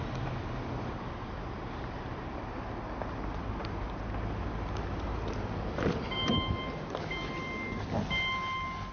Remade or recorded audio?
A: recorded